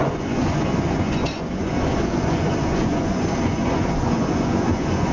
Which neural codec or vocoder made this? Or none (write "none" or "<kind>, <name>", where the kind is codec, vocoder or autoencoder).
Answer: vocoder, Vocos